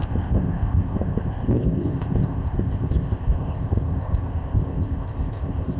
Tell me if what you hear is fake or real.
fake